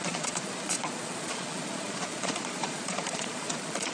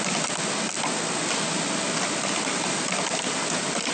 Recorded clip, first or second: second